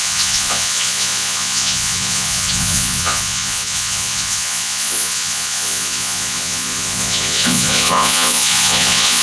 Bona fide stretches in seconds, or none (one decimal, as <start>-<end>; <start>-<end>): none